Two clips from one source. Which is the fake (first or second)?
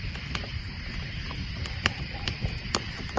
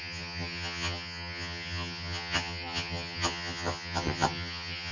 second